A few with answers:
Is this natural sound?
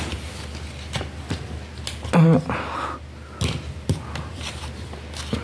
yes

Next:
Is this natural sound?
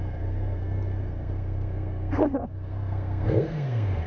no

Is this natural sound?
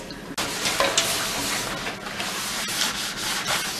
yes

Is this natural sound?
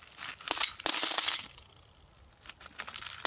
yes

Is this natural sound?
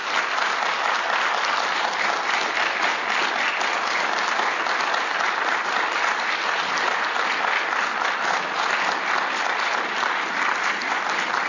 yes